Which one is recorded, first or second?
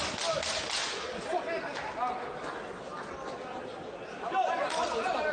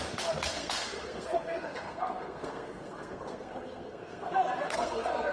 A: first